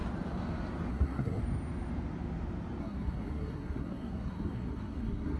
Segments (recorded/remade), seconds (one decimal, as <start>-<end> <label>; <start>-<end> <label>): 0.0-0.9 recorded; 0.9-1.4 remade; 1.4-2.8 recorded; 2.8-5.4 remade